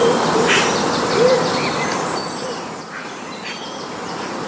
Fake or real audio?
fake